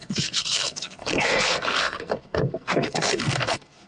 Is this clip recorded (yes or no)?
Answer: no